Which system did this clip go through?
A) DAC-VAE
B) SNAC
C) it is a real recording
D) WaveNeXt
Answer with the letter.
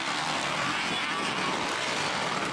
C